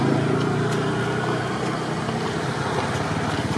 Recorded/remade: recorded